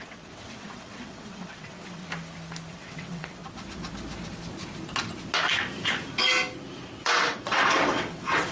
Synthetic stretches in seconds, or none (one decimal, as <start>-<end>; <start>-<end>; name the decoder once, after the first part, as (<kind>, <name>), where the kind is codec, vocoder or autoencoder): 0.0-2.0 (vocoder, WaveNeXt); 2.7-3.4; 7.0-8.5